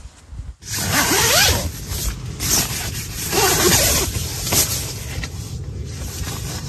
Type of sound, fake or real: real